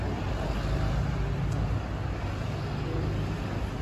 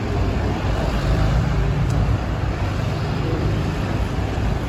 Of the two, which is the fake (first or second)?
second